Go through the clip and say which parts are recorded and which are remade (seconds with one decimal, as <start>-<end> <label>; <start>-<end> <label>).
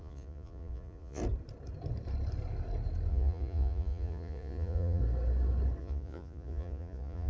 0.0-1.2 remade; 1.2-3.1 recorded; 3.1-5.0 remade; 5.0-5.8 recorded; 5.8-7.3 remade